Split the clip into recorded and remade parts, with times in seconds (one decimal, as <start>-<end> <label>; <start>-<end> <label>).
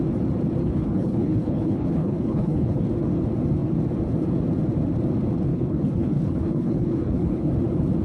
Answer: 0.0-0.6 recorded; 0.6-2.8 remade; 2.8-5.5 recorded; 5.5-7.5 remade; 7.5-8.0 recorded